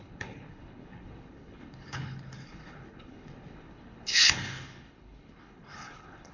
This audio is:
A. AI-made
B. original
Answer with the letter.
A